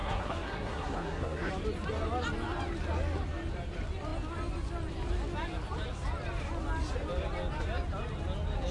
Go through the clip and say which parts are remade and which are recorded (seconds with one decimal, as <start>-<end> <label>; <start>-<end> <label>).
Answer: 0.0-1.5 remade; 1.5-8.7 recorded